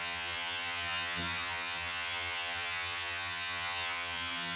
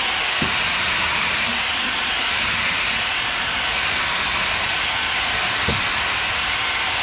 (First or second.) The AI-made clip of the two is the first